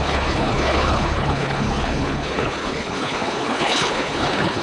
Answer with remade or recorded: remade